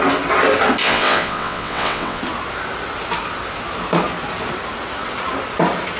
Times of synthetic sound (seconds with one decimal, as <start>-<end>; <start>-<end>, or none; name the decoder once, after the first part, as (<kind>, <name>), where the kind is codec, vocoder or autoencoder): 0.8-2.2 (vocoder, WaveNeXt)